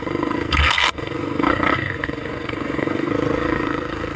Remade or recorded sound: remade